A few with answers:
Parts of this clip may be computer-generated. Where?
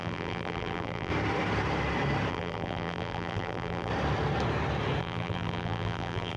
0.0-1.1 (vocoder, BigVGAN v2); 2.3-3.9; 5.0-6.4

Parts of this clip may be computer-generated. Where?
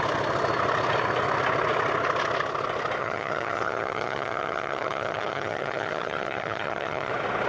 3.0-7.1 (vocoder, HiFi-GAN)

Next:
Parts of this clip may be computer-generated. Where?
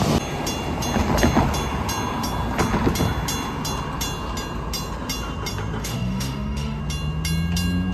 5.8-6.8 (autoencoder, DAC-VAE)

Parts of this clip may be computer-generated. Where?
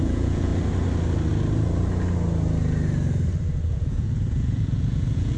0.0-0.5 (vocoder, Vocos); 3.7-5.4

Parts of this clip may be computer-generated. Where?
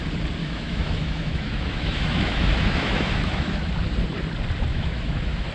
0.4-3.7 (autoencoder, DAC-VAE); 4.7-5.5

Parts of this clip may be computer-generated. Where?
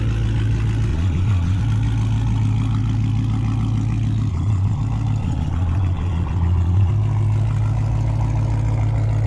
0.9-1.6 (vocoder, Vocos); 4.3-4.8; 5.2-6.9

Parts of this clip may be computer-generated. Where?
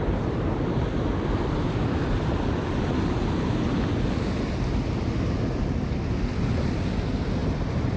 none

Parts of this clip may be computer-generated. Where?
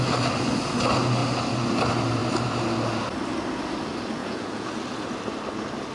4.2-4.7 (vocoder, Vocos)